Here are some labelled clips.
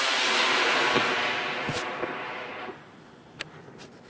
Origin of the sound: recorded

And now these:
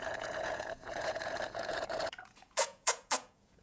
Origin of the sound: remade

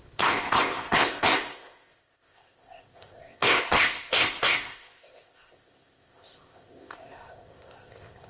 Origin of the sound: remade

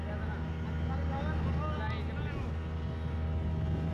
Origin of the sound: recorded